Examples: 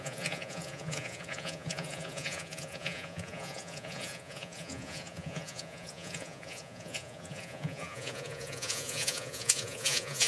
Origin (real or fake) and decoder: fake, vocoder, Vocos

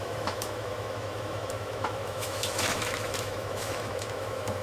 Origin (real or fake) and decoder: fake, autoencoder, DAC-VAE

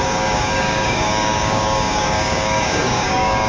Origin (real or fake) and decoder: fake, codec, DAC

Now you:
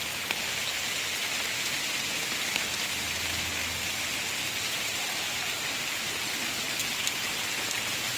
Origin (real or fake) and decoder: real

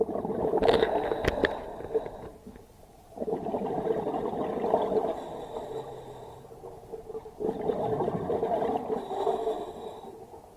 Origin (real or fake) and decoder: real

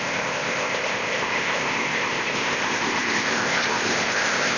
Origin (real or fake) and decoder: fake, codec, ZipCodec